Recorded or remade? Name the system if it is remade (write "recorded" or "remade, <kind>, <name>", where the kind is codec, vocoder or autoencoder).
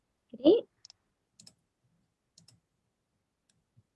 recorded